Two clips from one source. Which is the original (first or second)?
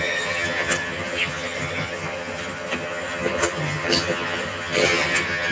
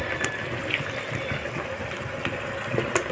second